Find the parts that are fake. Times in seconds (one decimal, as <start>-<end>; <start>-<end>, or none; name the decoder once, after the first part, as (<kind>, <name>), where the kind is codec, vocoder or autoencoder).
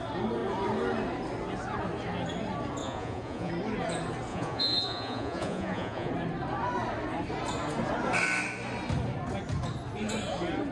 2.8-3.5 (vocoder, Vocos); 4.3-6.1